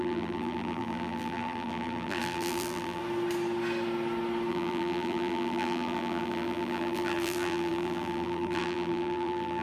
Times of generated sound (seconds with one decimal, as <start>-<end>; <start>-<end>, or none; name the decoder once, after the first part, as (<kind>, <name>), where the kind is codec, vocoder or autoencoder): 0.0-3.0 (vocoder, BigVGAN v2); 4.5-9.6